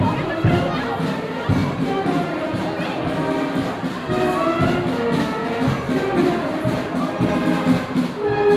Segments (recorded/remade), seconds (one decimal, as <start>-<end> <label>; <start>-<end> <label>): 0.0-1.6 recorded; 1.6-2.6 remade; 2.6-6.2 recorded; 6.2-7.4 remade; 7.4-8.6 recorded